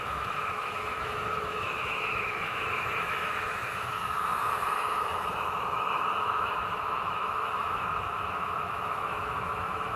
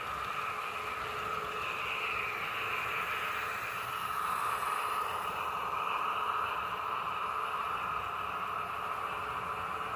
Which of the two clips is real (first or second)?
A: second